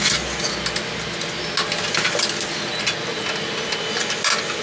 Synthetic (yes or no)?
no